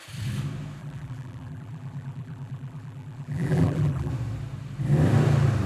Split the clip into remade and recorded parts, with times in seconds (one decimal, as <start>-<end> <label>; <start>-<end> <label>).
0.0-0.8 recorded; 0.8-4.1 remade; 4.1-5.7 recorded